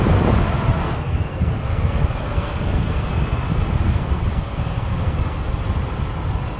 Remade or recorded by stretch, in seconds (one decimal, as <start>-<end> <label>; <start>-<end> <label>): 0.0-0.8 recorded; 0.8-3.1 remade; 3.1-3.5 recorded; 3.5-5.5 remade; 5.5-6.6 recorded